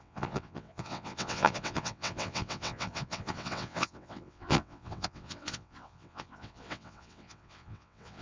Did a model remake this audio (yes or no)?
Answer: yes